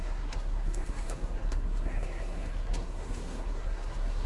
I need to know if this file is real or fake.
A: fake